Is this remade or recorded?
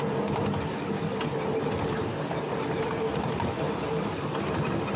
recorded